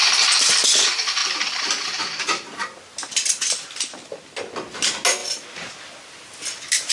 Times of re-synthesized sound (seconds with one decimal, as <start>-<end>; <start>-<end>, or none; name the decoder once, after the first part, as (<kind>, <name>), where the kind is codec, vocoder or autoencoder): 1.2-4.4 (vocoder, BigVGAN v2); 5.2-6.9